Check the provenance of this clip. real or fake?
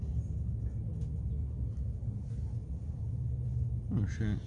real